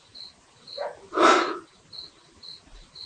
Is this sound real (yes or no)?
yes